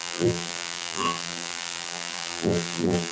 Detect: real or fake fake